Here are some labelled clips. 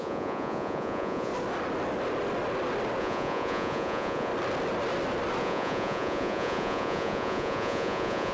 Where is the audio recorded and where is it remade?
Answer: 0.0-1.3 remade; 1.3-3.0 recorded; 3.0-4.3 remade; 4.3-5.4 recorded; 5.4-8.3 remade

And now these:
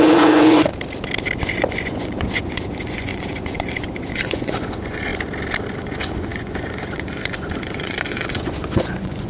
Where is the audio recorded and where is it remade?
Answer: 0.0-0.7 remade; 0.7-1.4 recorded; 1.4-5.1 remade; 5.1-5.8 recorded; 5.8-9.3 remade